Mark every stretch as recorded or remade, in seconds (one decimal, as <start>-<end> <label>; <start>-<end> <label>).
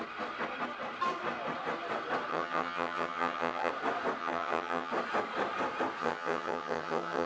0.0-2.3 recorded; 2.3-3.7 remade; 3.7-4.2 recorded; 4.2-4.9 remade; 4.9-6.0 recorded; 6.0-7.3 remade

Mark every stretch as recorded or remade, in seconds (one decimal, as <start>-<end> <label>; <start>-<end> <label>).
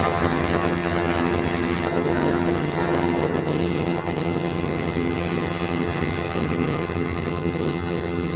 0.0-8.4 remade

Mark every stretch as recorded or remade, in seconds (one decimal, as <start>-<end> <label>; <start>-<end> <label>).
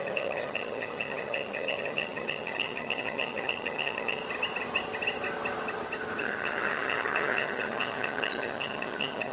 0.0-4.2 remade; 4.2-6.2 recorded; 6.2-9.3 remade